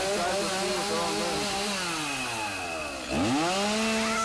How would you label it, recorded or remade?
recorded